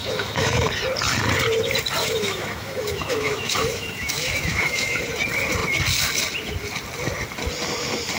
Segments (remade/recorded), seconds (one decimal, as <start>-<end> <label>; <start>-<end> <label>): 0.0-0.7 remade; 0.7-2.0 recorded; 2.0-5.0 remade; 5.0-8.2 recorded